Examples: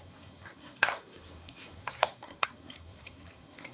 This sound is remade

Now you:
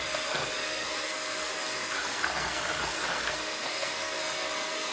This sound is remade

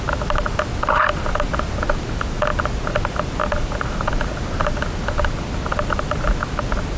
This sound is recorded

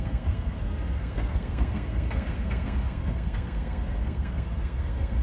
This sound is remade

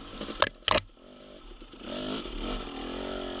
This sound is recorded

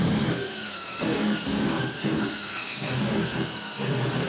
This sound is remade